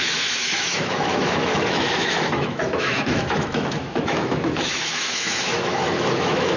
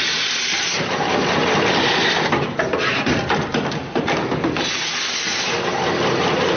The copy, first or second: first